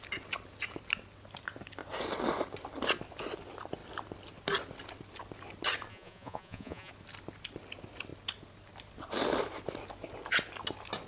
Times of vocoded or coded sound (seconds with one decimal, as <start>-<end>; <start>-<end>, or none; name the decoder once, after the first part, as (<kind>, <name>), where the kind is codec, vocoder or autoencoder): 5.9-6.9 (vocoder, Vocos)